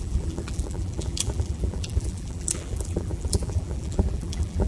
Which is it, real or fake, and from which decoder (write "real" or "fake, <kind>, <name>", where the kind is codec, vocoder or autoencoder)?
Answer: fake, vocoder, BigVGAN v2